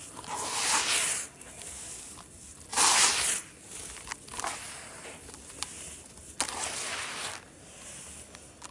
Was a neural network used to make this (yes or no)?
no